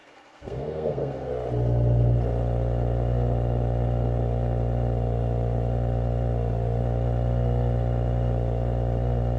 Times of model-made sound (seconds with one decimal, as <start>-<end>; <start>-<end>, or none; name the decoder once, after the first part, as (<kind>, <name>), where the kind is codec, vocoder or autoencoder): 0.0-1.3 (codec, SNAC)